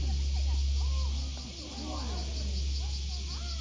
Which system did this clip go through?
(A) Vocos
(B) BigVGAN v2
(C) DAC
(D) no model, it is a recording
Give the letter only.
D